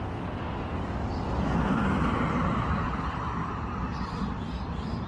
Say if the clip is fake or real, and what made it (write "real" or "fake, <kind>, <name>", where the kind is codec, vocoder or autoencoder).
fake, vocoder, BigVGAN v2